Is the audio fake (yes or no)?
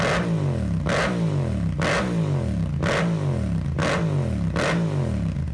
no